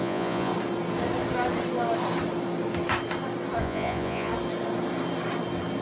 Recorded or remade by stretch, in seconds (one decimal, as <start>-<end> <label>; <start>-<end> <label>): 0.0-0.5 remade; 0.5-3.6 recorded; 3.6-4.3 remade; 4.3-5.8 recorded